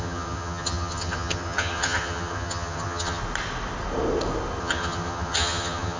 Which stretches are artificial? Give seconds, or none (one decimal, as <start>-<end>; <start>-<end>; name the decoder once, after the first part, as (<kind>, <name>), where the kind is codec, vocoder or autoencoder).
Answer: 0.0-3.2 (vocoder, HiFi-GAN); 4.6-6.0